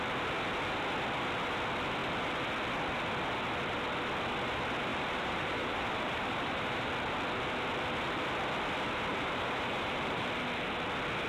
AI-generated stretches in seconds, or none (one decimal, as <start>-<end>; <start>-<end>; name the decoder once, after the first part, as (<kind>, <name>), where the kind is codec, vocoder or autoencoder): 4.9-6.9 (vocoder, BigVGAN v2); 9.1-10.2